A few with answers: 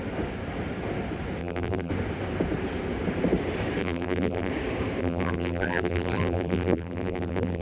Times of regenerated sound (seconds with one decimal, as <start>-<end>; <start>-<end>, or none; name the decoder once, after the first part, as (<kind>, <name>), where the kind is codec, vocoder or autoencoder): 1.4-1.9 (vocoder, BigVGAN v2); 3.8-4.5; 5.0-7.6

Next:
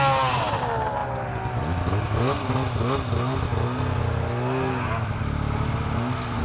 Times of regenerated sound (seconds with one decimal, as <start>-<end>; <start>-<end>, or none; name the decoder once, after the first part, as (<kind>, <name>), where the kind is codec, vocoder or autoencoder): none

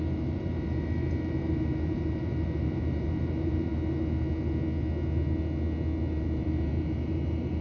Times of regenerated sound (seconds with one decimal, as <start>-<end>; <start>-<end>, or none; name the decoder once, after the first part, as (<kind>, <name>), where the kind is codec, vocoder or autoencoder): 0.0-3.7 (vocoder, BigVGAN v2); 6.1-7.6

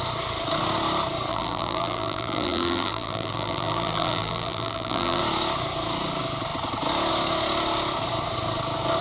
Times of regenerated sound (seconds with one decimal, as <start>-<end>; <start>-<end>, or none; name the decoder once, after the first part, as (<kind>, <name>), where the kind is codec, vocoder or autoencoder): 1.3-5.2 (vocoder, BigVGAN v2)

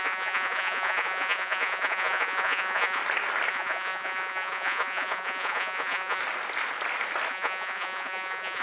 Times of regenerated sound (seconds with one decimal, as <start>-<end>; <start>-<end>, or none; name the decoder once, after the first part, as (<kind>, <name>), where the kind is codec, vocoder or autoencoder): 0.0-3.0 (vocoder, Vocos); 3.5-6.2; 7.3-8.6

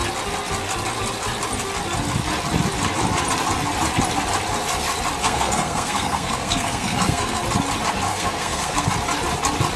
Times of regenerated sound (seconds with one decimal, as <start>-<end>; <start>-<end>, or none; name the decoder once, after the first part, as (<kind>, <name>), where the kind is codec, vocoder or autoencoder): 5.2-7.4 (codec, SNAC); 8.1-8.9